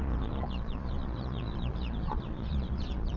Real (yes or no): no